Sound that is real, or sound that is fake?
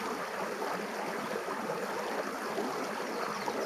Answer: real